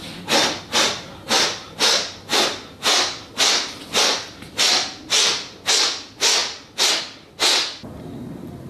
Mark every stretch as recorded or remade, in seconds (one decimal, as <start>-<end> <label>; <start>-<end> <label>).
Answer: 0.0-8.7 recorded

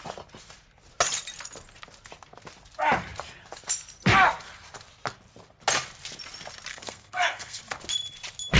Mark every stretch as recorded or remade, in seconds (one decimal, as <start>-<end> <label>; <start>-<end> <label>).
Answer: 0.0-6.7 recorded; 6.7-7.6 remade; 7.6-8.6 recorded